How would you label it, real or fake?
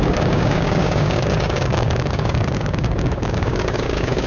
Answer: fake